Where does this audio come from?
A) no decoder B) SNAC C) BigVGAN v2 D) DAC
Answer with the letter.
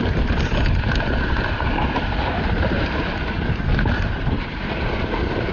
A